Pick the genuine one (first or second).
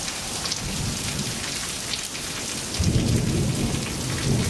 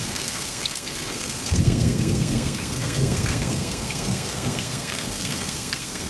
first